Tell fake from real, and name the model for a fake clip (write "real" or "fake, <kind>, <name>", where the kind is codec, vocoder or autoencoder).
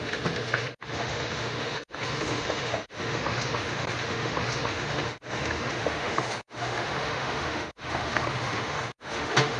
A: fake, autoencoder, DAC-VAE